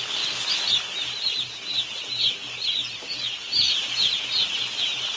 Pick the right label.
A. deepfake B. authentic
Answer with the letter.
B